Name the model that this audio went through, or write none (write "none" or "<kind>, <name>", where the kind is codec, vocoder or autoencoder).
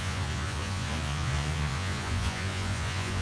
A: vocoder, Vocos